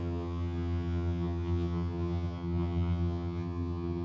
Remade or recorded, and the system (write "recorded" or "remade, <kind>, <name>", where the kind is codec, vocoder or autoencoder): remade, vocoder, HiFi-GAN